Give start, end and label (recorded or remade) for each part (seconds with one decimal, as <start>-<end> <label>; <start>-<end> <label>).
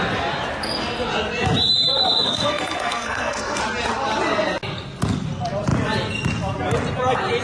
0.0-1.9 recorded; 1.9-3.6 remade; 3.6-7.4 recorded